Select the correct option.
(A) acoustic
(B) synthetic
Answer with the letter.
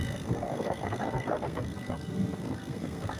B